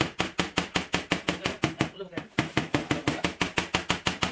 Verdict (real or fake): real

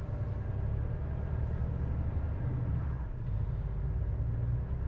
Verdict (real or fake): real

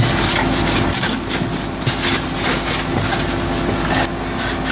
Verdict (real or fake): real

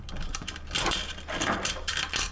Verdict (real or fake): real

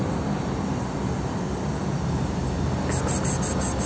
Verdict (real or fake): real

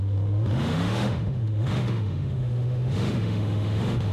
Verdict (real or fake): fake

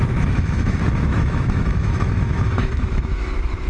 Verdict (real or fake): fake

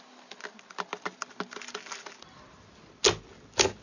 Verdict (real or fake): real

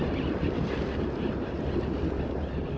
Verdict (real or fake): real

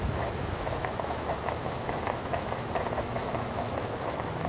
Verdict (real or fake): fake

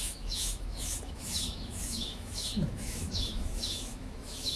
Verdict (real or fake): fake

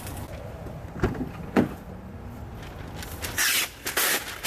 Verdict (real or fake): real